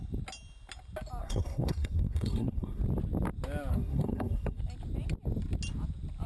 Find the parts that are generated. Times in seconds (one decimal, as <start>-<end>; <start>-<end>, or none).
1.2-2.8; 3.7-4.6